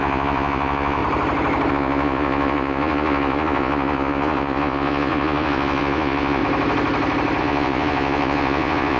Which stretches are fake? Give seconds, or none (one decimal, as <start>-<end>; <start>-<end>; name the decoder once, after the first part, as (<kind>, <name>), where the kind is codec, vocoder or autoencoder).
0.0-1.0 (vocoder, Vocos); 1.7-6.4; 7.4-9.0